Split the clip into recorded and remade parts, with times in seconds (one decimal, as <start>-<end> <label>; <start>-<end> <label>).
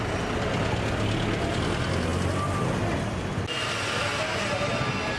0.0-5.2 recorded